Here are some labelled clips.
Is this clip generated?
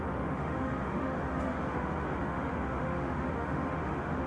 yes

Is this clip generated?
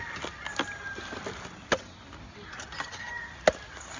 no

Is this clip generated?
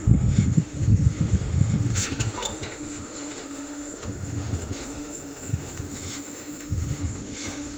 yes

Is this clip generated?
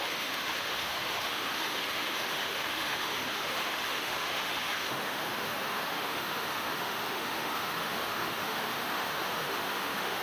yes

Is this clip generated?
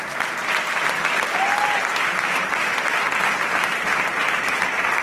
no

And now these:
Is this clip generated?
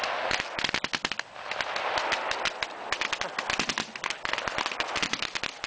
no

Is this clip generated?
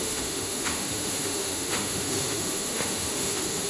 yes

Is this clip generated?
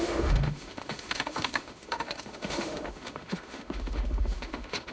yes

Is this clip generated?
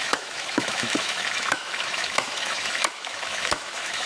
yes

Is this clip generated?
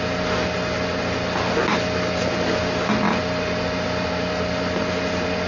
no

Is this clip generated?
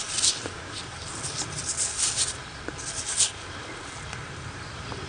no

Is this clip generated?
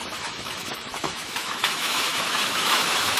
yes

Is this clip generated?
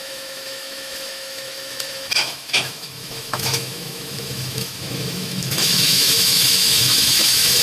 yes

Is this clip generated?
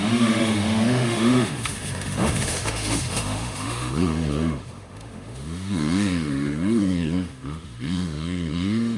yes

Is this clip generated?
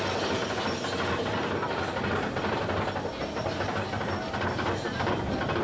no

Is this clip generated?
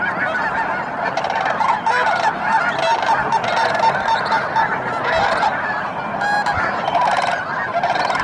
no